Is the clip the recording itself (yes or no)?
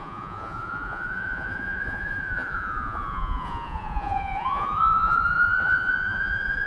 no